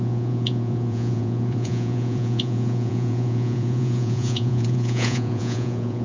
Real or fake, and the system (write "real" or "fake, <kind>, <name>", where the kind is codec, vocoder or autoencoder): fake, vocoder, Vocos